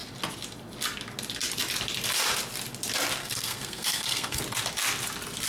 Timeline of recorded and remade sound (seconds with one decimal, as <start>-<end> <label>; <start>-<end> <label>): 0.0-3.2 recorded; 3.2-4.4 remade; 4.4-5.5 recorded